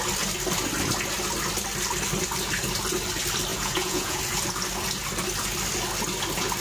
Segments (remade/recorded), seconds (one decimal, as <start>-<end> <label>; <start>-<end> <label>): 0.0-3.5 recorded; 3.5-4.2 remade; 4.2-6.6 recorded